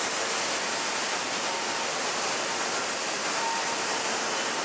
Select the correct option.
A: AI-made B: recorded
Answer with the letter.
B